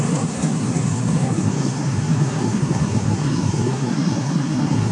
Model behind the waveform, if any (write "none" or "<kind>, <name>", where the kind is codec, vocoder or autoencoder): codec, SNAC